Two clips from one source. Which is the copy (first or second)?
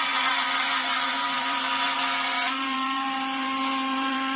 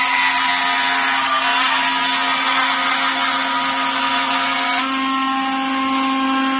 first